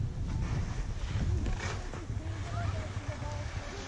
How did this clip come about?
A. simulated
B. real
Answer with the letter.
B